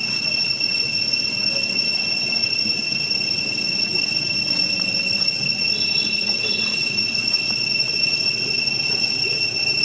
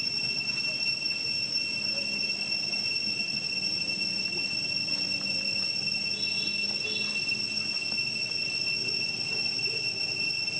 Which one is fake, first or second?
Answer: first